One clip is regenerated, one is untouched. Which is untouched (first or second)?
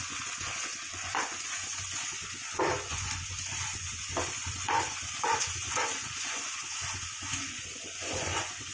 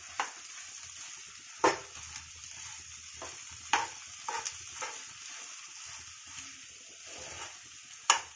second